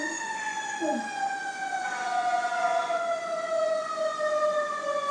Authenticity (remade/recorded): remade